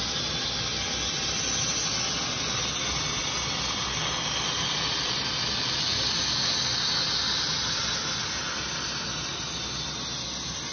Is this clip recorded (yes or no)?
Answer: yes